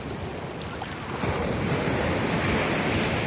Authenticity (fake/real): real